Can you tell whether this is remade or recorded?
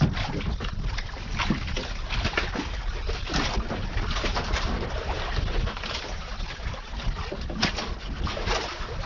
recorded